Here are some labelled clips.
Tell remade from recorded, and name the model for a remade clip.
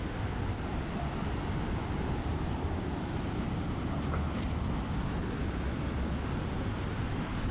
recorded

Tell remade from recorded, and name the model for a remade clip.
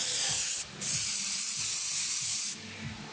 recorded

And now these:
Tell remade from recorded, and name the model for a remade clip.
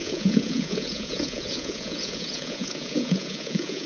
remade, vocoder, Vocos